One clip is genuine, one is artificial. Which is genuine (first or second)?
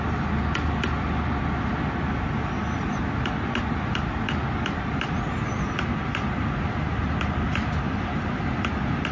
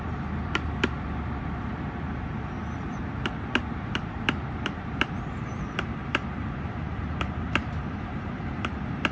first